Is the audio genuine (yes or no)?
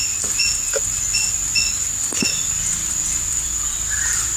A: yes